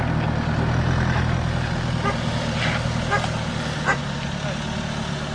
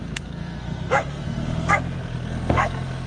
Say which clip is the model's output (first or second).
second